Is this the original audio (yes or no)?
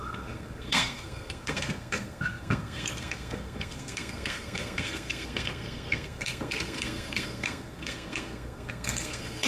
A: no